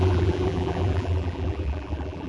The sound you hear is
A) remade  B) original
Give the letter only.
A